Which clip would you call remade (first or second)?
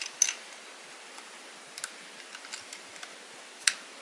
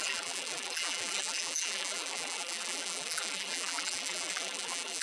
second